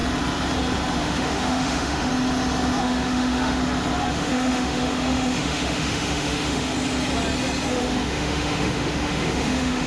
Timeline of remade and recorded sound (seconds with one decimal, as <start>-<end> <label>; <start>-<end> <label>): 0.0-1.0 recorded; 1.0-2.1 remade; 2.1-2.8 recorded; 2.8-3.6 remade; 3.6-4.1 recorded; 4.1-6.7 remade; 6.7-7.7 recorded; 7.7-9.9 remade